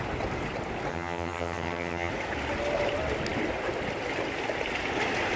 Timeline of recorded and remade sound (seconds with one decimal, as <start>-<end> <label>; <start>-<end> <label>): 0.0-0.9 recorded; 0.9-2.1 remade; 2.1-5.4 recorded